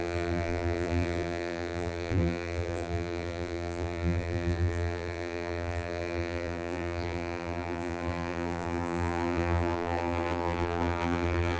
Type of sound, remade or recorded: remade